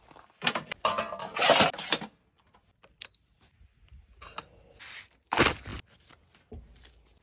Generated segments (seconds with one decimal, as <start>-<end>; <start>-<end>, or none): none